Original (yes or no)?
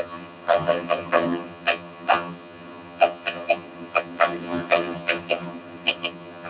no